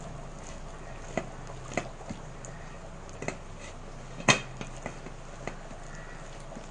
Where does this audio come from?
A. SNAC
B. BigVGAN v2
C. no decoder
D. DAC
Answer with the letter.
C